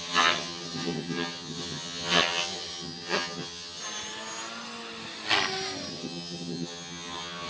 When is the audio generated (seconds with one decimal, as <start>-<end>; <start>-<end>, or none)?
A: 0.0-3.8; 5.9-7.5